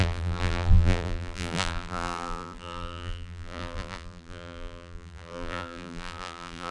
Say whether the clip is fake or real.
fake